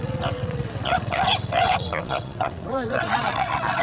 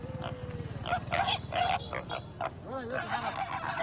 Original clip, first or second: second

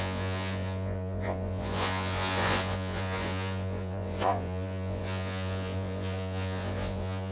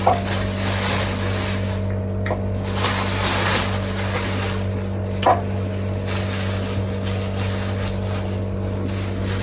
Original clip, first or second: second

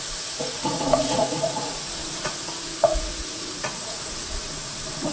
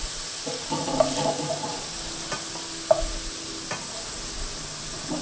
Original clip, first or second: second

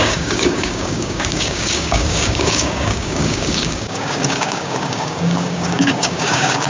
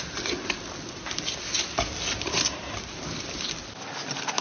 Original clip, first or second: second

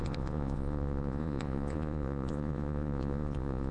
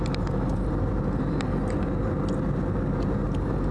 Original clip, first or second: second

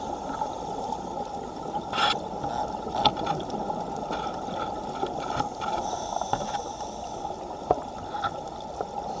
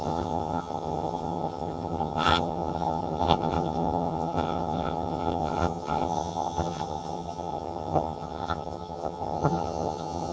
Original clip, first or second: first